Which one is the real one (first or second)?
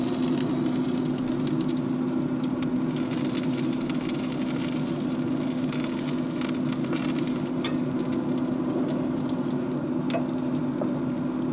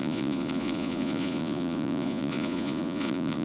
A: first